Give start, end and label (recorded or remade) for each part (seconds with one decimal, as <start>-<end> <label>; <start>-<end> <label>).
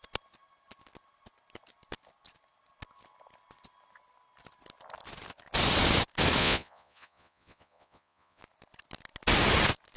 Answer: 0.0-6.4 recorded; 6.4-8.4 remade; 8.4-10.0 recorded